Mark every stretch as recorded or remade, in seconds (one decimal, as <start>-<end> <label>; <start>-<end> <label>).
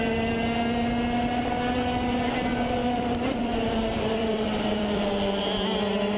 0.0-2.8 recorded; 2.8-5.0 remade; 5.0-6.2 recorded